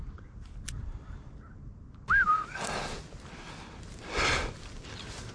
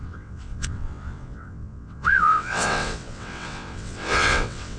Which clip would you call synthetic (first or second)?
second